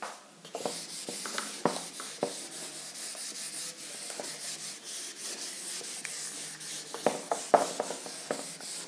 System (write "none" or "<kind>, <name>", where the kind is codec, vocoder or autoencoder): none